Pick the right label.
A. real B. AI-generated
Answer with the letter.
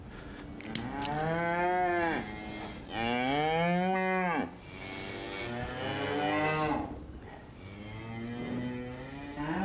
A